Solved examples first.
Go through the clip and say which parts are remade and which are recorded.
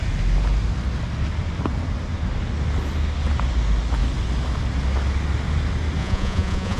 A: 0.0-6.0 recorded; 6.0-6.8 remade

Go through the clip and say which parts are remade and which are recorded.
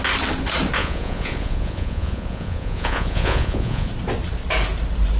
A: 0.0-0.8 recorded; 0.8-3.9 remade; 3.9-5.2 recorded